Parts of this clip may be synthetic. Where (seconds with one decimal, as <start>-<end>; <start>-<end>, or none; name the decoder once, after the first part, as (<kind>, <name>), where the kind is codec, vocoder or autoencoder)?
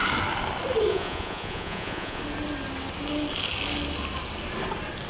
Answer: 0.9-2.2 (vocoder, Vocos)